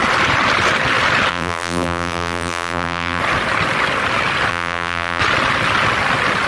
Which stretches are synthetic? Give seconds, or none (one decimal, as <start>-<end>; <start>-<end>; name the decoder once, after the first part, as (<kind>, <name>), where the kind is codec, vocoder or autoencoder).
1.3-3.2 (vocoder, BigVGAN v2); 4.5-5.2